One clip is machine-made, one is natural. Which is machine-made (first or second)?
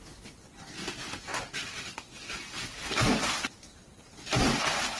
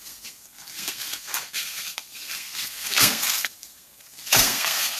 second